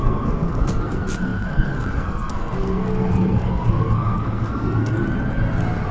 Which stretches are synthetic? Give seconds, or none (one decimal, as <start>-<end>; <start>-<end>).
0.0-5.0